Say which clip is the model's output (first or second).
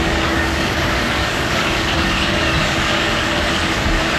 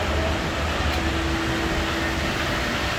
first